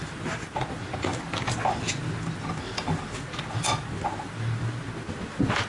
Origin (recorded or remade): recorded